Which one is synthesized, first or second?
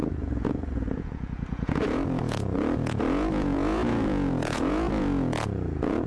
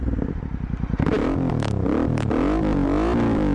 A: first